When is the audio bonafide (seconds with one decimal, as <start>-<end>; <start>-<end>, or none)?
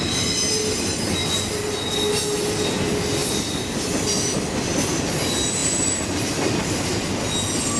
0.0-7.8